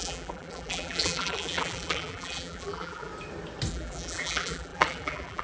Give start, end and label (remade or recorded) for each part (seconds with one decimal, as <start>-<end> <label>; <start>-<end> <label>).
0.0-3.1 remade; 3.1-3.7 recorded; 3.7-5.4 remade